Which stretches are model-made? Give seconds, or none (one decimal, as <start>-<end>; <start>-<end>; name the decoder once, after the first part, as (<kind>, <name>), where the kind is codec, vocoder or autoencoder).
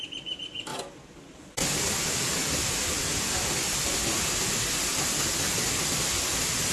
0.0-6.7 (vocoder, BigVGAN v2)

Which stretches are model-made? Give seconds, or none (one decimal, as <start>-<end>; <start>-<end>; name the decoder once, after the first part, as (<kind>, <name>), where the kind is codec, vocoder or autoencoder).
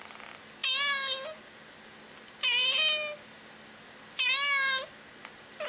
none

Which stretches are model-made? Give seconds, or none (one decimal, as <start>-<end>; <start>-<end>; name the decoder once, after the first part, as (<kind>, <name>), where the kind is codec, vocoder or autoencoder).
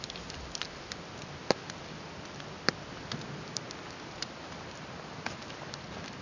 none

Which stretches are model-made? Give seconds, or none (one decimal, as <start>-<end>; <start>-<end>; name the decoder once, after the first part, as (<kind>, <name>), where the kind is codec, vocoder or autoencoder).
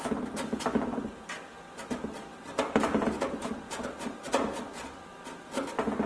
0.9-1.5 (vocoder, BigVGAN v2); 2.3-6.1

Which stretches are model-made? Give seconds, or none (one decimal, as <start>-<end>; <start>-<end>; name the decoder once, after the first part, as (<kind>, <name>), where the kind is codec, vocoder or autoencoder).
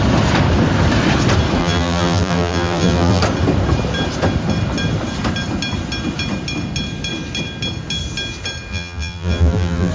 1.6-3.2 (vocoder, BigVGAN v2); 8.7-9.9